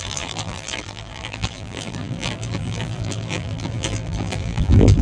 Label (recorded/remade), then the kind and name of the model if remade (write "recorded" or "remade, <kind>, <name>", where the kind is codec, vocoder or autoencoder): remade, vocoder, BigVGAN v2